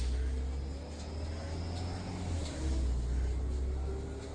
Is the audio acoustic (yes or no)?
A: yes